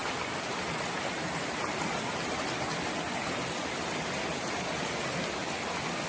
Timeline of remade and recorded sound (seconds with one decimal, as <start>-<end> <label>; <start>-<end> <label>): 0.0-6.1 recorded

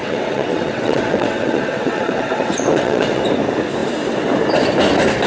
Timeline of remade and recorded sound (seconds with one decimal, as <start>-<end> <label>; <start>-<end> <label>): 0.0-3.2 remade; 3.2-5.3 recorded

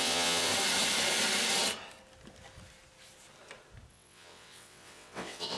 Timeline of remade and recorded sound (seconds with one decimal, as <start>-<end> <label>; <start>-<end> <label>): 0.0-0.5 remade; 0.5-3.9 recorded; 3.9-5.6 remade

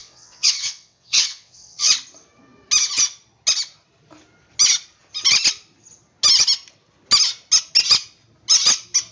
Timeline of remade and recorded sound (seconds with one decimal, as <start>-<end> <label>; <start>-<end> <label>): 0.0-1.9 remade; 1.9-9.1 recorded